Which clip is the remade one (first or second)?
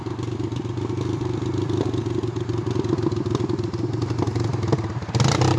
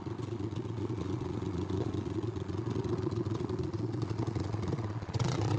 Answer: second